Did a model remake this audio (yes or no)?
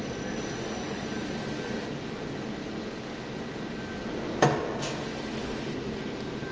no